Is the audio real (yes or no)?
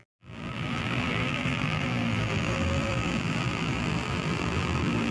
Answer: no